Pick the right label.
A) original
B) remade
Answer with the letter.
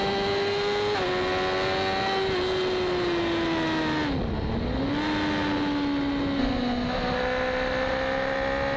A